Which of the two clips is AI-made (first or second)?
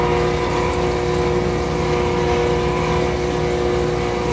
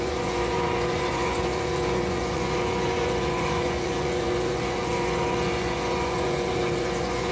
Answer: second